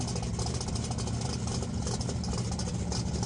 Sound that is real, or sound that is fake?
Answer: real